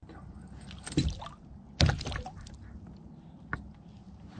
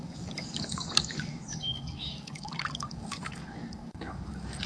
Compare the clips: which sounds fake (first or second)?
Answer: second